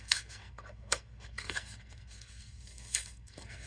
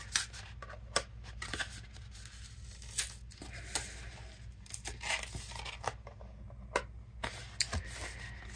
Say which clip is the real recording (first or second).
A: second